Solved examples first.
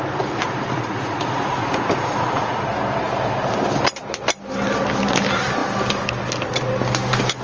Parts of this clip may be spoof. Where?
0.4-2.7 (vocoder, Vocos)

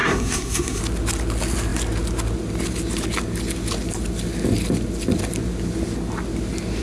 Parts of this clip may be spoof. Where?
0.0-0.8 (codec, SNAC)

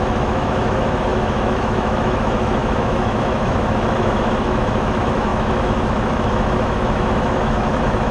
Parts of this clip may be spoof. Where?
0.0-8.1 (autoencoder, DAC-VAE)

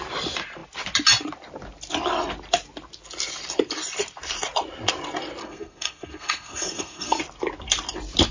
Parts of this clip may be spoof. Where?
5.4-7.2 (codec, SNAC)

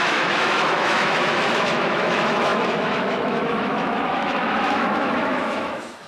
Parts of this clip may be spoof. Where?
0.0-6.1 (autoencoder, DAC-VAE)

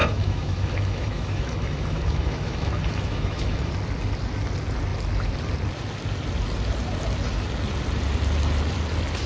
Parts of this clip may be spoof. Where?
0.0-3.7 (autoencoder, DAC-VAE)

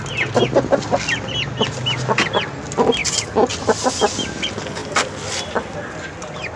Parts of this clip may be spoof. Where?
3.0-3.9 (vocoder, BigVGAN v2); 4.8-6.6

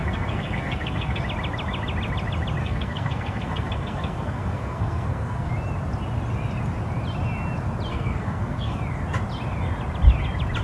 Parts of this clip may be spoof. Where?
0.0-1.2 (codec, SNAC); 2.6-5.5; 7.9-8.8